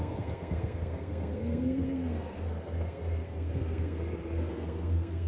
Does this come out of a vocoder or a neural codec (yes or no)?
yes